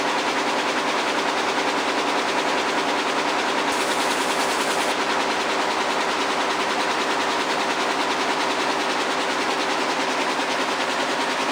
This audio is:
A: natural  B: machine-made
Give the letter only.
A